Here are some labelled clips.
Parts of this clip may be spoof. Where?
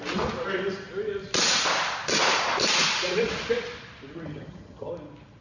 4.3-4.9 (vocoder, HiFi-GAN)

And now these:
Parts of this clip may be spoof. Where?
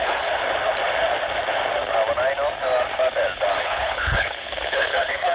0.0-0.4 (codec, HILCodec); 3.6-5.3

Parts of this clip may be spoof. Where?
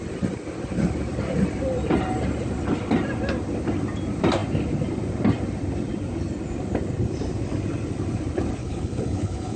8.6-9.6 (codec, HILCodec)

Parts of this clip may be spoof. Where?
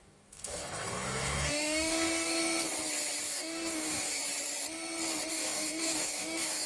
0.0-2.4 (codec, DAC); 3.2-4.2; 5.3-6.7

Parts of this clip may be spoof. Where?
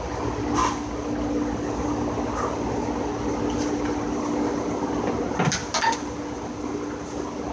none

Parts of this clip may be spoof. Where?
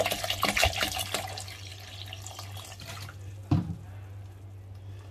none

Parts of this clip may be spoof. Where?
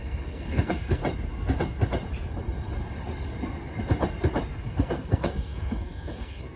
0.0-1.0 (codec, SNAC); 4.7-6.6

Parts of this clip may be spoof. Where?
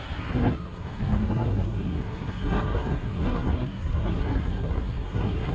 0.0-5.5 (codec, SNAC)